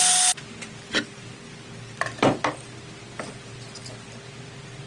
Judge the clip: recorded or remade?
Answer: recorded